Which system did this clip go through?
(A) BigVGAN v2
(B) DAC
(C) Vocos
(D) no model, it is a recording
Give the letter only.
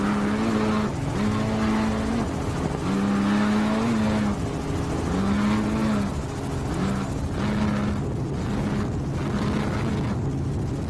D